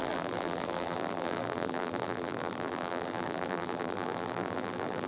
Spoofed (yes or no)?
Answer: yes